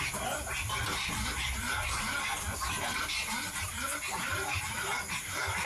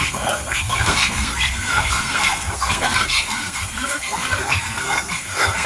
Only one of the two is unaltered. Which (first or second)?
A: first